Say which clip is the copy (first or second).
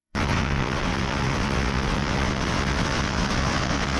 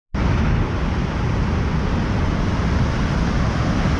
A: first